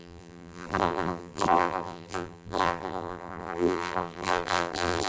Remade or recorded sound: remade